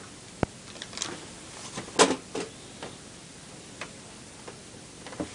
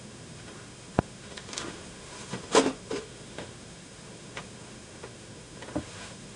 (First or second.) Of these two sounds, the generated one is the second